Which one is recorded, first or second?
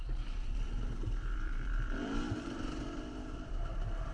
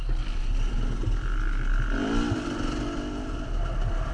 second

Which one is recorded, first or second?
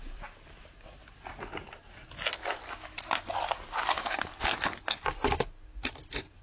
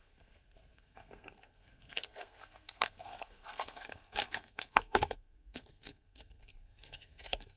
first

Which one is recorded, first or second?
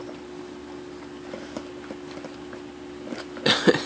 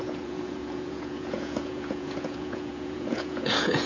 first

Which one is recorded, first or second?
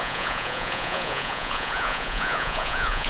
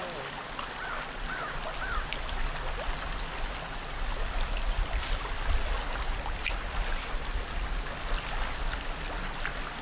second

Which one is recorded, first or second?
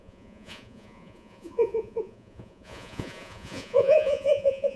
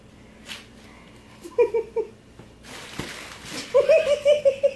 second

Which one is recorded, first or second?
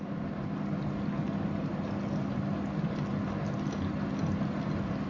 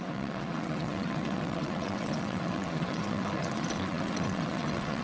first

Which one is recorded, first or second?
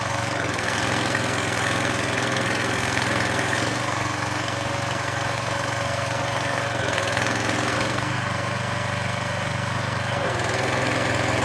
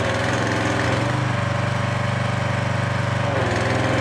second